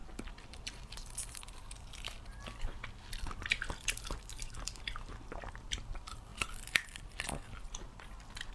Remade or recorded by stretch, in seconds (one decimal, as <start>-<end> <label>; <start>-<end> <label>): 0.0-6.3 remade; 6.3-7.6 recorded; 7.6-8.5 remade